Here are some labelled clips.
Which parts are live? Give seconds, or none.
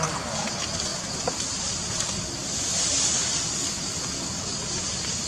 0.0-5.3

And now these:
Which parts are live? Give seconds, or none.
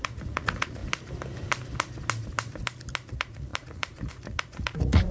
0.8-3.1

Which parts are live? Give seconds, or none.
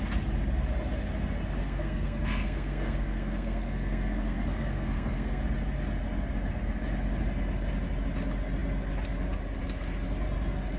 0.0-1.6; 5.4-10.8